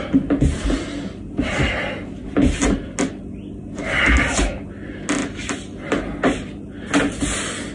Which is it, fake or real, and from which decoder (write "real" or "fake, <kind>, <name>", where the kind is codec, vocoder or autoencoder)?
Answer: real